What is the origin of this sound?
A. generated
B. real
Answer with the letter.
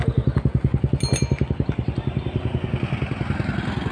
B